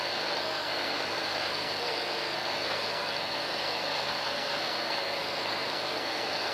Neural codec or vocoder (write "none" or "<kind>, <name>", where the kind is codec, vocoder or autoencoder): codec, SNAC